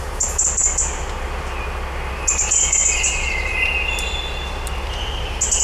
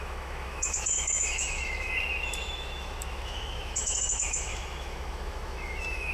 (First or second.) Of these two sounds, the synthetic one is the second